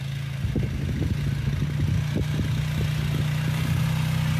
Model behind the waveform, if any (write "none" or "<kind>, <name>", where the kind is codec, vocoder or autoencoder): none